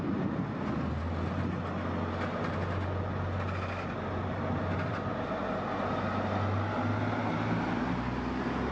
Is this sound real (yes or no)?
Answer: yes